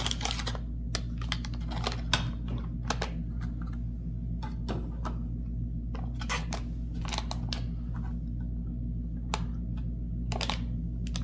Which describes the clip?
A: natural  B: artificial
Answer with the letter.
A